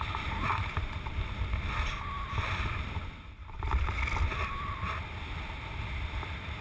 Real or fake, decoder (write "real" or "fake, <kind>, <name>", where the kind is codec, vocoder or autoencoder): real